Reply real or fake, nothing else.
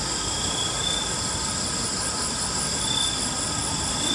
real